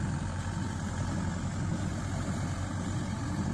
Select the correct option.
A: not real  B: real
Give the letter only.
A